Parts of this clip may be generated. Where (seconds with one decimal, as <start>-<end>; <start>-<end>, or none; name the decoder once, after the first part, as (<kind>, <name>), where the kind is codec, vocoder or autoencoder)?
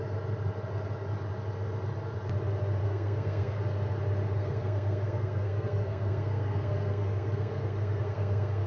2.8-3.6 (codec, SNAC); 4.4-8.7